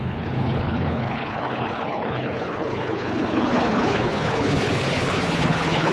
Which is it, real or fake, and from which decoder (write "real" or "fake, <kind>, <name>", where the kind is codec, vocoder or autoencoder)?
fake, codec, HILCodec